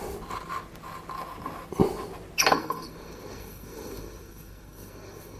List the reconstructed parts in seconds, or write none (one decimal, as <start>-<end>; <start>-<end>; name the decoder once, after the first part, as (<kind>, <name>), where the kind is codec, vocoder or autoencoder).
2.5-5.4 (codec, SNAC)